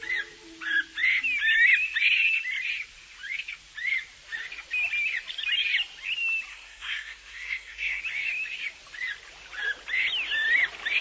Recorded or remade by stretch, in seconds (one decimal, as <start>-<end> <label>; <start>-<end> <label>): 0.0-6.5 recorded; 6.5-8.0 remade; 8.0-11.0 recorded